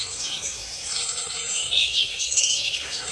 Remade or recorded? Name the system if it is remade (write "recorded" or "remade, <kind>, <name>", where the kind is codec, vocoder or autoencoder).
remade, codec, SNAC